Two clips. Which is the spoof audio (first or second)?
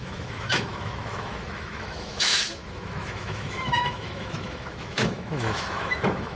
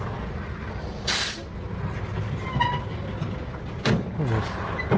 first